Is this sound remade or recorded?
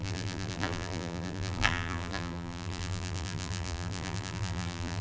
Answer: remade